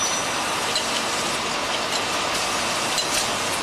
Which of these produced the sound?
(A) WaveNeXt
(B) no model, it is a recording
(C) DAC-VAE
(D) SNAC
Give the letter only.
B